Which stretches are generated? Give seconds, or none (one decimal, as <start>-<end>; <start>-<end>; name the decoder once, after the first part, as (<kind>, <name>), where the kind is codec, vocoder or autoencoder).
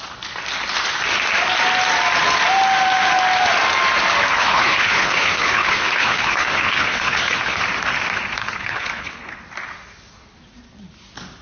4.3-7.6 (codec, HILCodec); 8.4-9.4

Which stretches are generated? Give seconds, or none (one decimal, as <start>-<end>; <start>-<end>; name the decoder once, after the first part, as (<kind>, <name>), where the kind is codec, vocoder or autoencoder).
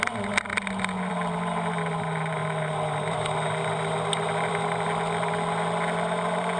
none